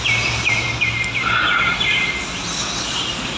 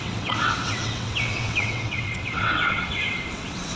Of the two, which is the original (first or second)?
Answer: first